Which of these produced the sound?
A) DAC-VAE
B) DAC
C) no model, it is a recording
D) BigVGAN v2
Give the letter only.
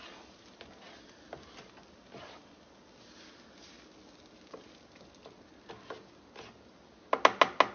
C